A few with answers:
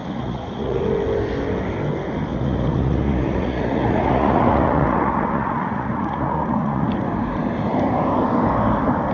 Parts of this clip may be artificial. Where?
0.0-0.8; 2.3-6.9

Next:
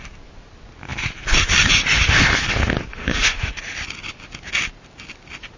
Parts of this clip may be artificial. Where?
2.9-3.5

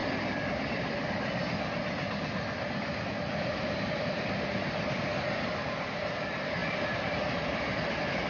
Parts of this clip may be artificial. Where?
none

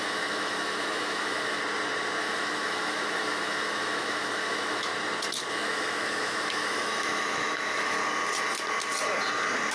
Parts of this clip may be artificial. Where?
0.0-1.6; 2.2-4.9; 5.5-8.0

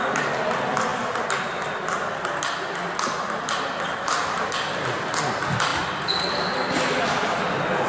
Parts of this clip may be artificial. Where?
none

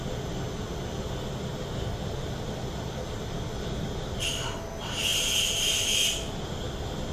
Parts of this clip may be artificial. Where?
none

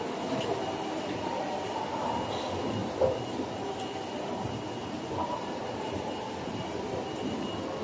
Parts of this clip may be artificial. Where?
2.8-3.3; 4.8-5.7